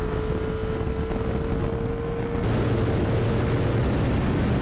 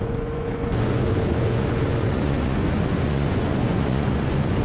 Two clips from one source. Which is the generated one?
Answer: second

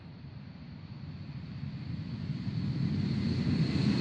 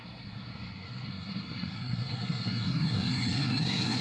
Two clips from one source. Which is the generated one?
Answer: second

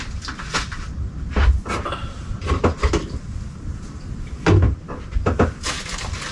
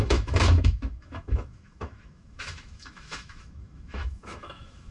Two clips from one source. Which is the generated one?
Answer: second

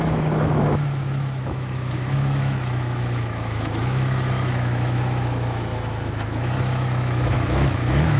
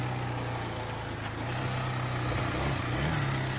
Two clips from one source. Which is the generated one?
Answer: first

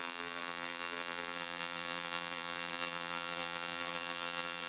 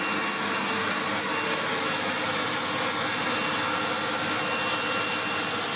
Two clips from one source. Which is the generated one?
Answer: first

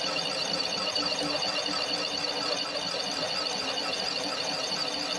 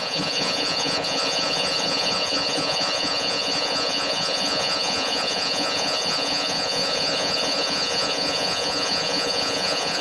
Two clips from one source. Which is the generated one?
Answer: second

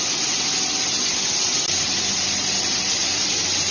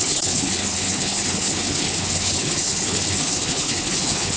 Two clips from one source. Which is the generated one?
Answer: second